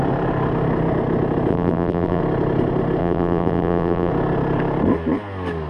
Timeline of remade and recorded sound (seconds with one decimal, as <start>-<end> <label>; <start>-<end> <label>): 0.0-1.5 recorded; 1.5-2.2 remade; 2.2-3.0 recorded; 3.0-4.1 remade; 4.1-5.7 recorded